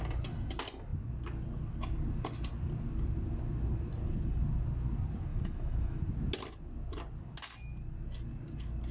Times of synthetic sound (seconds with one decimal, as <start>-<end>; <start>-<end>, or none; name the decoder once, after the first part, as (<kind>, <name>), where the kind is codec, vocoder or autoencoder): 5.3-6.0 (autoencoder, DAC-VAE)